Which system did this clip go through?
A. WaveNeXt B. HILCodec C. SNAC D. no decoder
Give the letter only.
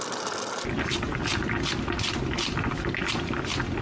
D